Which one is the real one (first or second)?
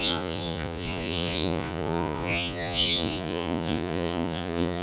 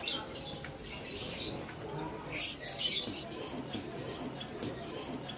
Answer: second